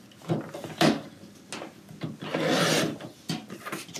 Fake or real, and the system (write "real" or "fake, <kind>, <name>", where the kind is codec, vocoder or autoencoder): real